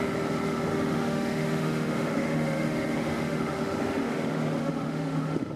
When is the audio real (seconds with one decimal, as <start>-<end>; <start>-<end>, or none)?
0.0-0.7; 4.1-4.6